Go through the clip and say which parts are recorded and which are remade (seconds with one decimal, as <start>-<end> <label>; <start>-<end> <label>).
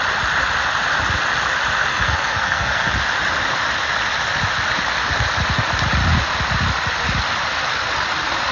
0.0-1.9 recorded; 1.9-2.9 remade; 2.9-8.5 recorded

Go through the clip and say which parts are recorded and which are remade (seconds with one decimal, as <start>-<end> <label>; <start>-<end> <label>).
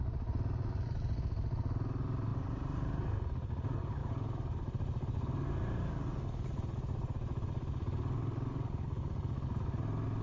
0.0-2.3 recorded; 2.3-3.0 remade; 3.0-4.0 recorded; 4.0-6.1 remade; 6.1-10.2 recorded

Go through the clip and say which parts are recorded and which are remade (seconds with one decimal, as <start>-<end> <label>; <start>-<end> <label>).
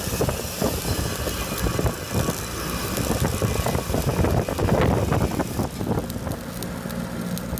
0.0-7.6 recorded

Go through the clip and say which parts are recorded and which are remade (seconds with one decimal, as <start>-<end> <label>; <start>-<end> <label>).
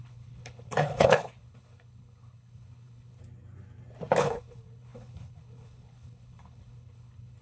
0.0-3.2 remade; 3.2-4.2 recorded; 4.2-7.4 remade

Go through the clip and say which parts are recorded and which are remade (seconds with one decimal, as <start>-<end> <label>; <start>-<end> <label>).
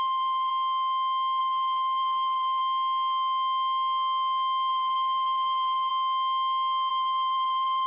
0.0-0.5 remade; 0.5-1.4 recorded; 1.4-2.6 remade; 2.6-4.7 recorded; 4.7-5.9 remade; 5.9-6.9 recorded; 6.9-7.9 remade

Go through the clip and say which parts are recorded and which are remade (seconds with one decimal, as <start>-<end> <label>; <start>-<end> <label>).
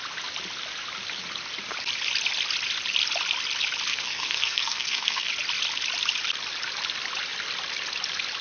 0.0-3.9 recorded; 3.9-5.3 remade; 5.3-8.4 recorded